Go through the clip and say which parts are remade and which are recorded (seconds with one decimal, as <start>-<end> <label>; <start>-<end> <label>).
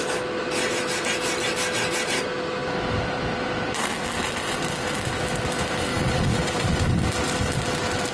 0.0-5.9 recorded; 5.9-6.9 remade; 6.9-8.1 recorded